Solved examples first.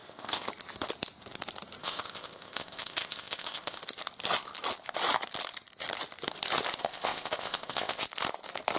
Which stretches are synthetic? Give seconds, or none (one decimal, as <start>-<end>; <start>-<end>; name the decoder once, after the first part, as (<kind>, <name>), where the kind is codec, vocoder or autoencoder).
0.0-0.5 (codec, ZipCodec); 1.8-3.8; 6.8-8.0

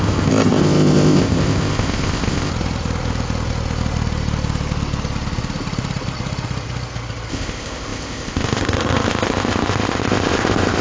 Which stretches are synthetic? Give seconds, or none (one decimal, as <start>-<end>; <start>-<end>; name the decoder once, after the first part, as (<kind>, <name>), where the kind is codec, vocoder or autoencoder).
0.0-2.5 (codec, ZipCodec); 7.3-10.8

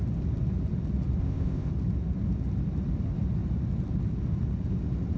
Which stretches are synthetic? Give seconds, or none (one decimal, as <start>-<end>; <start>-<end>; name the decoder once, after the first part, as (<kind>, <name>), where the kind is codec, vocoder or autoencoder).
1.2-1.7 (codec, ZipCodec)